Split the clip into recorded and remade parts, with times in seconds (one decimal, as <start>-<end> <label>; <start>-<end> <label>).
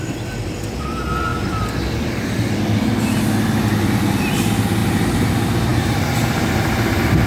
0.0-5.7 recorded; 5.7-7.3 remade